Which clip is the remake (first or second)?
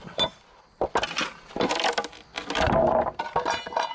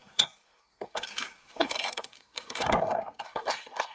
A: second